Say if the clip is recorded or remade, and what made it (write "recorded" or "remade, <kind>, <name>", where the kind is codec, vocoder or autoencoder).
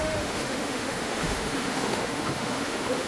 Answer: remade, autoencoder, DAC-VAE